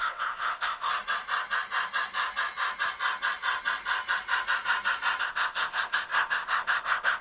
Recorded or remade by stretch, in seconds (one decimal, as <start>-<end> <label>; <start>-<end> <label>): 0.0-0.9 remade; 0.9-5.2 recorded; 5.2-7.2 remade